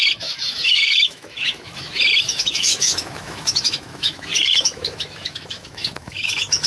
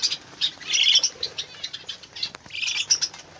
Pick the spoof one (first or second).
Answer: first